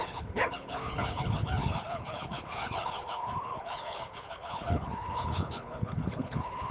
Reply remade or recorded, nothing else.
remade